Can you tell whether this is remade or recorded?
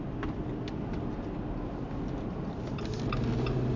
recorded